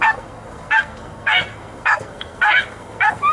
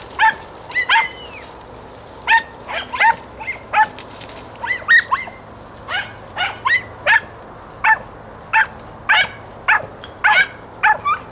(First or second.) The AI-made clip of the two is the first